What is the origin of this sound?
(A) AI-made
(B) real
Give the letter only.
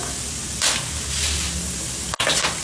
B